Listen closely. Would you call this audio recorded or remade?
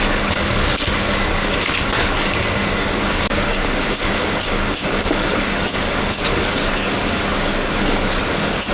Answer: remade